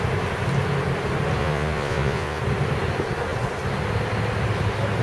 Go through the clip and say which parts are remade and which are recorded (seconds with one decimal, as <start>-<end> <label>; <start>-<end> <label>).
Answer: 0.0-1.4 recorded; 1.4-2.4 remade; 2.4-5.0 recorded